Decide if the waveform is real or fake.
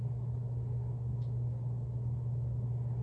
real